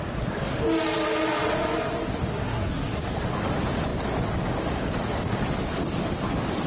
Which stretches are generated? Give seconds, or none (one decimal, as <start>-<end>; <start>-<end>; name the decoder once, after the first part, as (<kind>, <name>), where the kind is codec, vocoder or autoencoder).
2.3-3.0 (codec, SNAC)